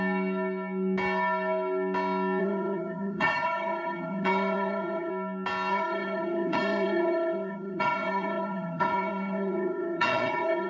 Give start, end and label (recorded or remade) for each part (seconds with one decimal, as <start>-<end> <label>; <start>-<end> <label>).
0.0-2.4 recorded; 2.4-5.1 remade; 5.1-5.7 recorded; 5.7-10.7 remade